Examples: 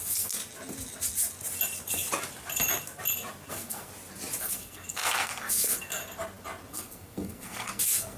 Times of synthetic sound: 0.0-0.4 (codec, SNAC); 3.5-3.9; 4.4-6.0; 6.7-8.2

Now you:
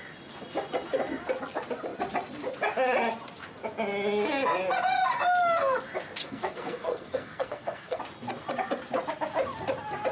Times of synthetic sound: 6.2-8.0 (codec, SNAC)

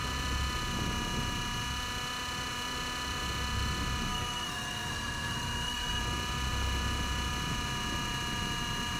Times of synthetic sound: 4.1-6.0 (codec, SNAC)

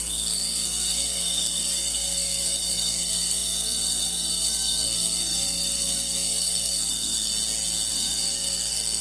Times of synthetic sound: 0.0-7.3 (codec, SNAC); 7.9-9.0

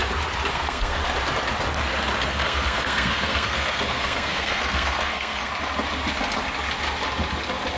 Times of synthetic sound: 0.5-1.0 (codec, SNAC); 2.3-5.5

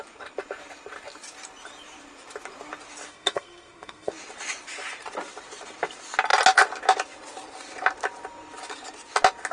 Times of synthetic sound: 3.1-4.1 (codec, SNAC)

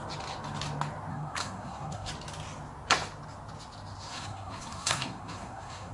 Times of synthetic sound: 1.1-2.1 (codec, SNAC); 4.0-5.9

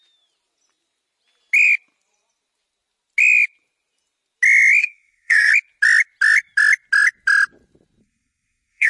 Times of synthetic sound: 4.8-5.5 (codec, SNAC); 8.0-8.9